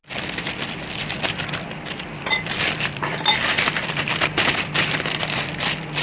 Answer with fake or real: real